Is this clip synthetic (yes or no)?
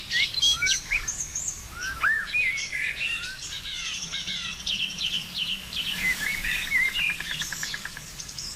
yes